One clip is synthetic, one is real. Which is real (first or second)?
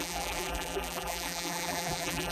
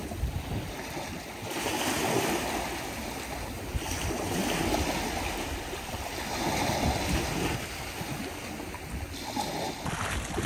second